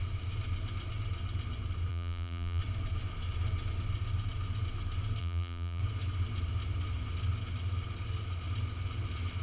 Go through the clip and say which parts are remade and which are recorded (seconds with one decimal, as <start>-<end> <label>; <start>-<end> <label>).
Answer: 0.0-1.9 recorded; 1.9-2.6 remade; 2.6-5.2 recorded; 5.2-5.8 remade; 5.8-9.4 recorded

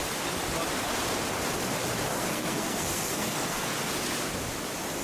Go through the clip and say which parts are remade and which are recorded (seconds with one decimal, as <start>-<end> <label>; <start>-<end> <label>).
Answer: 0.0-2.1 recorded; 2.1-3.7 remade; 3.7-5.0 recorded

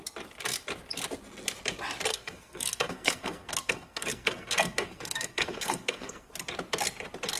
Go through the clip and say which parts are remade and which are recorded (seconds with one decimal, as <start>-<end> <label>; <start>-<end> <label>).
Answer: 0.0-2.1 recorded; 2.1-6.3 remade; 6.3-7.4 recorded

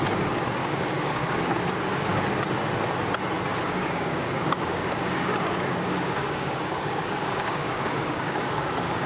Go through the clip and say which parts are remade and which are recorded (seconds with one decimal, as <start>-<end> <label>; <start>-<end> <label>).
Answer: 0.0-0.6 recorded; 0.6-1.2 remade; 1.2-3.8 recorded; 3.8-9.1 remade

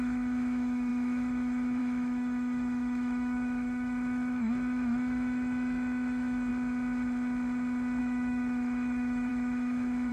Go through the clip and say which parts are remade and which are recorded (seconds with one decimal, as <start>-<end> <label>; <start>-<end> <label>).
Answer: 0.0-6.5 remade; 6.5-8.0 recorded; 8.0-10.1 remade

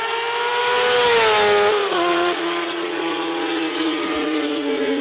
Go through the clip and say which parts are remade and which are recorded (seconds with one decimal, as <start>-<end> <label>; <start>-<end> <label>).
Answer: 0.0-1.8 recorded; 1.8-5.0 remade

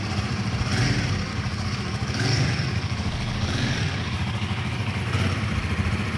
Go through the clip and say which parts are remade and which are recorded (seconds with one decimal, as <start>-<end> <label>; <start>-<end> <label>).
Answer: 0.0-1.3 recorded; 1.3-5.0 remade; 5.0-6.2 recorded

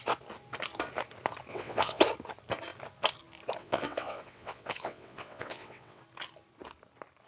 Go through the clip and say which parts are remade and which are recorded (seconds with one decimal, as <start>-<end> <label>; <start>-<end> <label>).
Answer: 0.0-1.5 recorded; 1.5-2.0 remade; 2.0-3.6 recorded; 3.6-6.0 remade; 6.0-7.3 recorded